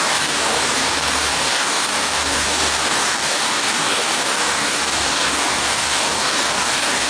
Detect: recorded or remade remade